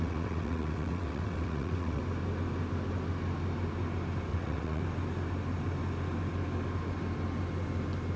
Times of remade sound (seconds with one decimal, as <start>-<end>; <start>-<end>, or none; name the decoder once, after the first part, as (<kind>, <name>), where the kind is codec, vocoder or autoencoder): 0.0-2.0 (vocoder, WaveNeXt); 4.3-4.8